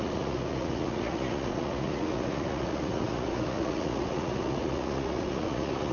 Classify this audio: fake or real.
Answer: fake